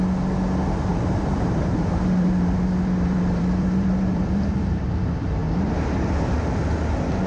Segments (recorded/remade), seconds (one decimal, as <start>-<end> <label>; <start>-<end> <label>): 0.0-0.9 recorded; 0.9-4.8 remade; 4.8-7.3 recorded